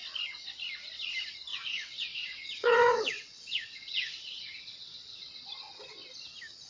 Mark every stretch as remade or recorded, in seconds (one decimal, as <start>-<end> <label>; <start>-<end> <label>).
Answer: 0.0-1.5 recorded; 1.5-5.5 remade; 5.5-6.7 recorded